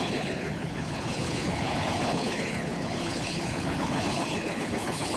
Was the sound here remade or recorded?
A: remade